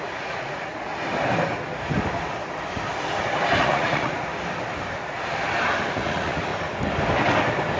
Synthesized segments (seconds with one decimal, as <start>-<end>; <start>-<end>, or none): 0.0-0.9; 3.6-4.3; 5.9-6.5